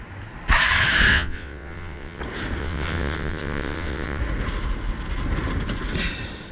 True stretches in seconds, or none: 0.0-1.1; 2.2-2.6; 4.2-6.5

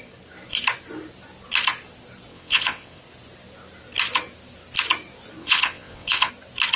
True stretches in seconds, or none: 0.0-2.3; 3.0-5.4; 6.3-6.8

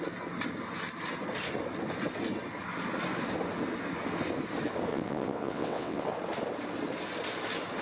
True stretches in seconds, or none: 0.0-4.9; 6.0-7.8

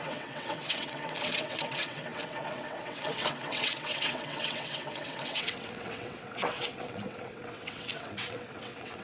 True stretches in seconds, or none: none